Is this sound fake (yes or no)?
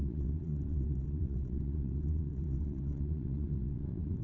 yes